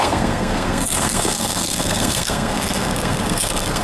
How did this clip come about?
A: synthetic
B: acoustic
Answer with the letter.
A